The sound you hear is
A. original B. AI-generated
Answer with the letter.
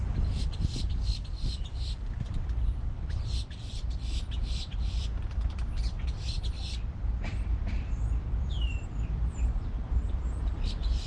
B